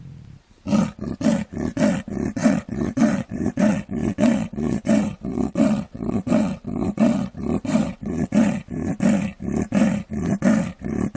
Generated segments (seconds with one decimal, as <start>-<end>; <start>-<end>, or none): 2.4-7.3; 7.8-8.9